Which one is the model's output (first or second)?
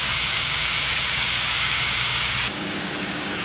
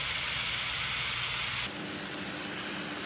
first